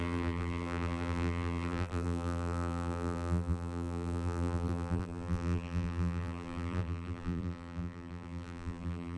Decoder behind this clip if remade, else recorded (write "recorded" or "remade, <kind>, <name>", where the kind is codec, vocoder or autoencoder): remade, vocoder, BigVGAN v2